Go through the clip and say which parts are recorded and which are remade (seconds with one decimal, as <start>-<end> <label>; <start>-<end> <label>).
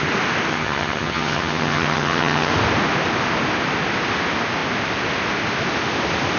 0.0-0.5 recorded; 0.5-2.5 remade; 2.5-6.4 recorded